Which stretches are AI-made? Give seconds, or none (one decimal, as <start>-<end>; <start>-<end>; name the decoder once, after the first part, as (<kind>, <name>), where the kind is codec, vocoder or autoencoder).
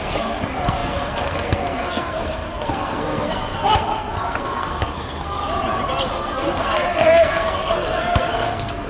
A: 0.0-5.4 (codec, SNAC); 6.1-8.9